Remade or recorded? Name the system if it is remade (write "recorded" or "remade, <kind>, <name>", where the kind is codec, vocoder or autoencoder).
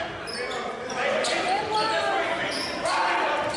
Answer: recorded